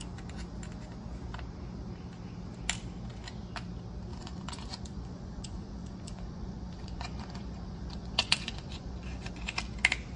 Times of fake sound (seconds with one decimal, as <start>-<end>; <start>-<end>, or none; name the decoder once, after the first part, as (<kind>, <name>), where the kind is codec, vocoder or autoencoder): 4.1-9.3 (vocoder, Vocos)